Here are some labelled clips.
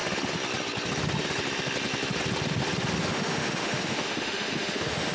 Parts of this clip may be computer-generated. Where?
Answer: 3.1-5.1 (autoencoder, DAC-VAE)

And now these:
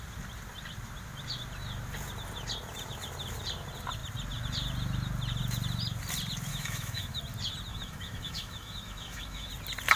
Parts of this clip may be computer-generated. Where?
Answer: 6.5-7.2 (autoencoder, DAC-VAE); 7.7-9.5

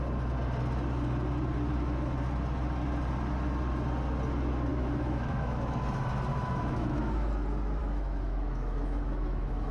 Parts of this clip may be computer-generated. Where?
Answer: 4.7-5.8 (autoencoder, DAC-VAE); 6.3-7.3; 7.8-9.7

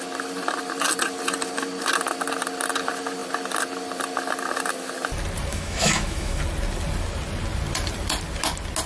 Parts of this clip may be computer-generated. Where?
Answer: 5.5-6.4 (autoencoder, DAC-VAE)

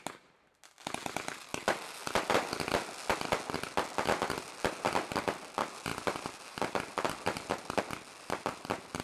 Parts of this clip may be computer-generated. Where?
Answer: none

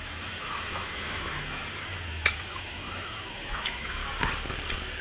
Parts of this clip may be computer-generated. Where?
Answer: 0.0-1.6 (autoencoder, DAC-VAE); 2.1-4.0

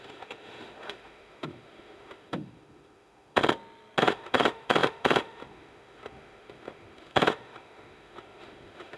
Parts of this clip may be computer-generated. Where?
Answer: 0.0-3.4 (autoencoder, DAC-VAE); 4.0-9.0